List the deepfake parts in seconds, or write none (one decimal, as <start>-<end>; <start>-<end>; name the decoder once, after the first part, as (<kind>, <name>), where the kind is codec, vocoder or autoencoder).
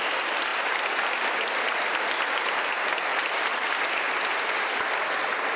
3.1-3.8 (vocoder, BigVGAN v2)